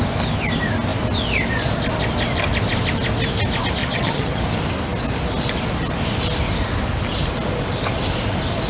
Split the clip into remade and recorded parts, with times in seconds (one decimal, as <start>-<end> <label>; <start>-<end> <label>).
0.0-3.8 recorded; 3.8-4.4 remade; 4.4-8.7 recorded